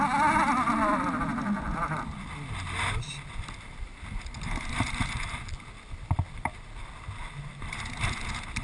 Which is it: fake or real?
real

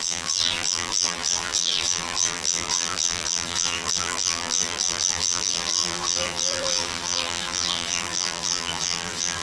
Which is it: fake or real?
fake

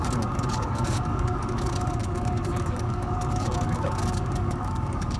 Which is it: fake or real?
fake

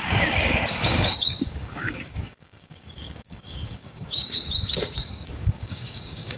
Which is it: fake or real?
fake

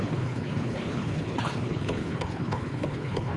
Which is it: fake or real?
fake